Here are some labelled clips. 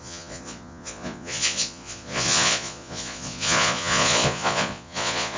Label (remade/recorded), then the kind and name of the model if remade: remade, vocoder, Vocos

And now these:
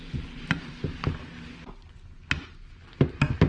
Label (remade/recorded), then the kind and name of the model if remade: recorded